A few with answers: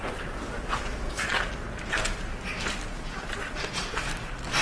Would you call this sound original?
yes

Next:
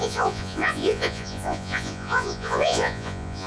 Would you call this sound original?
no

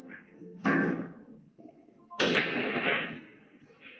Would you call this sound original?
no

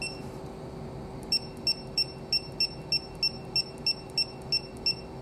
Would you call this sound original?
yes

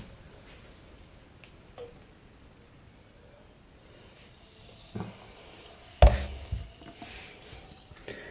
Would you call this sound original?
yes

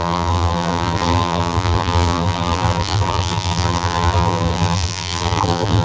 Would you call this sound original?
no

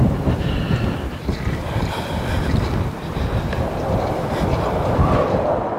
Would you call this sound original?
no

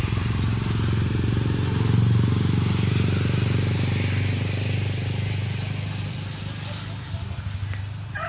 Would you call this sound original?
yes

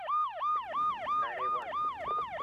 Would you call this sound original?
yes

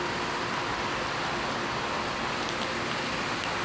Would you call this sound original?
yes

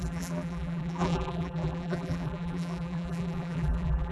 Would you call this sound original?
no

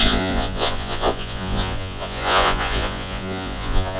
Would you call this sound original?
no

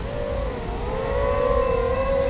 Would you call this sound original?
yes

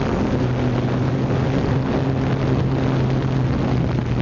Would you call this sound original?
yes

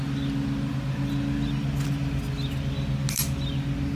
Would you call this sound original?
yes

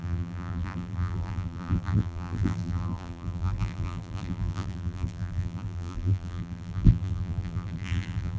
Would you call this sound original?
no